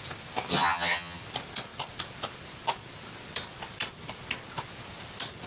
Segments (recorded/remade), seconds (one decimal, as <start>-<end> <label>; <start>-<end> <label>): 0.0-0.5 recorded; 0.5-1.2 remade; 1.2-5.5 recorded